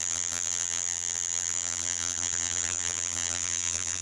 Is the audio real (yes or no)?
no